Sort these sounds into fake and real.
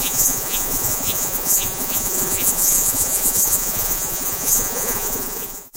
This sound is fake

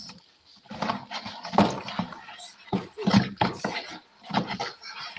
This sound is real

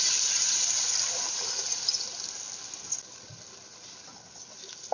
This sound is real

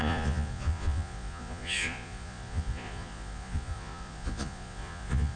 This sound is fake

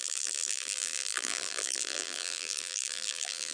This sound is fake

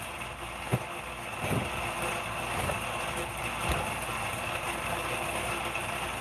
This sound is real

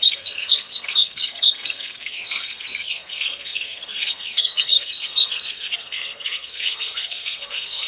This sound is fake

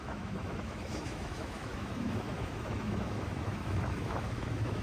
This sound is fake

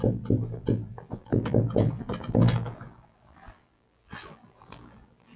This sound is fake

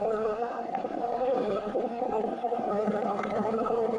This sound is fake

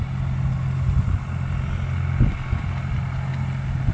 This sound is real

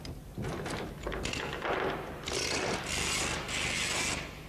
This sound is real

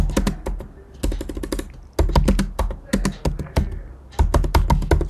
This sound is real